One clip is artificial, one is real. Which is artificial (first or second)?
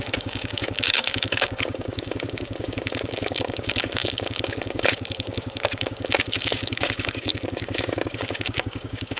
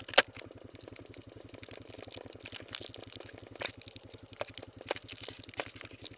first